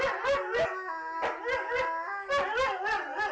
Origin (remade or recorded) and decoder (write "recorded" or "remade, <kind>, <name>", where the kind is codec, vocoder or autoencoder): recorded